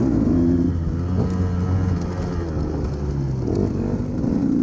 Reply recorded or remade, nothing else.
recorded